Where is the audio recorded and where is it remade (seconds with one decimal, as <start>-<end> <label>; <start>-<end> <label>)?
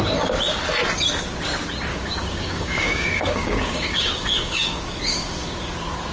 0.0-1.9 recorded; 1.9-5.6 remade; 5.6-6.1 recorded